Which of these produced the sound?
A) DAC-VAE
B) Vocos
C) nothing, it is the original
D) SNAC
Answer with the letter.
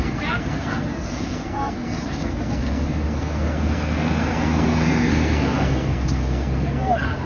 D